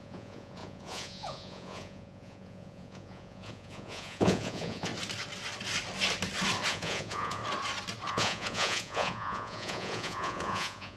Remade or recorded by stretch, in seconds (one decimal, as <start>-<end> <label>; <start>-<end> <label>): 0.0-4.9 remade; 4.9-6.7 recorded; 6.7-7.4 remade; 7.4-8.1 recorded; 8.1-11.0 remade